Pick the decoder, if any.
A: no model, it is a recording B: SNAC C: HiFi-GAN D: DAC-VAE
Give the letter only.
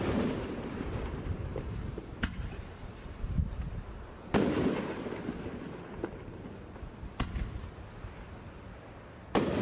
A